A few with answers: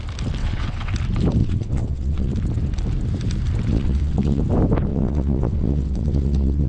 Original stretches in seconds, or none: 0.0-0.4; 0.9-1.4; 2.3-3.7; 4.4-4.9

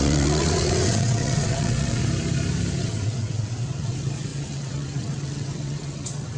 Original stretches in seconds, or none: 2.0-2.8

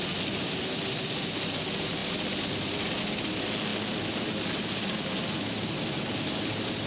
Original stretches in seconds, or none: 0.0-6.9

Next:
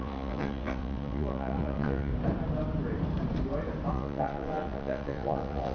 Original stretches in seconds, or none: 2.1-3.9

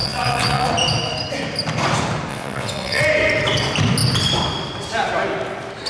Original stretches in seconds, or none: 0.7-2.3; 3.0-5.9